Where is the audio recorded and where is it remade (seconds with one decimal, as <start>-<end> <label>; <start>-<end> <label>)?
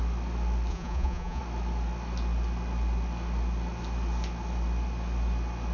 0.0-0.7 recorded; 0.7-1.4 remade; 1.4-5.7 recorded